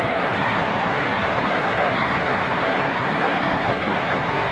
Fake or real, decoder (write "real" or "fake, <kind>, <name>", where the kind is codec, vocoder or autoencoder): fake, codec, SNAC